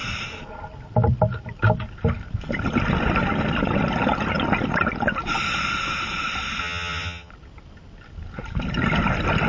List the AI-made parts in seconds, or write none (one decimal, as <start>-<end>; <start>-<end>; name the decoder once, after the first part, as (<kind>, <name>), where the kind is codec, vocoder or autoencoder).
6.6-7.3 (vocoder, HiFi-GAN)